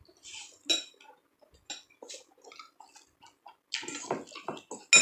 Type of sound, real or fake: real